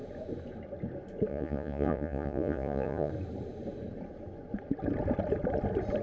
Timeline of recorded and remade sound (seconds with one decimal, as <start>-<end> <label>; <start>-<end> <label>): 0.0-1.3 recorded; 1.3-3.1 remade; 3.1-6.0 recorded